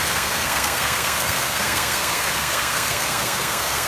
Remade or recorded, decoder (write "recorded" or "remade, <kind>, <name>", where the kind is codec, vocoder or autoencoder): remade, codec, SNAC